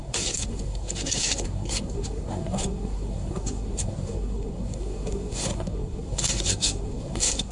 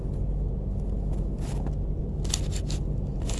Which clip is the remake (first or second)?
first